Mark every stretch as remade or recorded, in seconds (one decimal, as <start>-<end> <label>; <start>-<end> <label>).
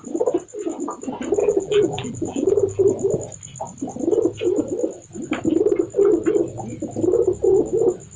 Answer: 0.0-1.4 recorded; 1.4-2.8 remade; 2.8-8.2 recorded